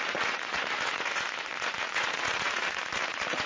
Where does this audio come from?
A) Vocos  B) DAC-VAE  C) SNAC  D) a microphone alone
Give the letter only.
A